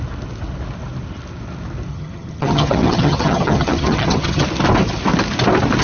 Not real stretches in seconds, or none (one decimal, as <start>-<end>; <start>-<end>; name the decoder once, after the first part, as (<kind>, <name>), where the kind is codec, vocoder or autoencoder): 1.9-4.4 (vocoder, HiFi-GAN)